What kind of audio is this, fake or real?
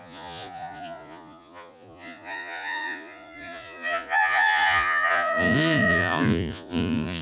fake